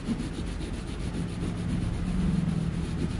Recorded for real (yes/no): yes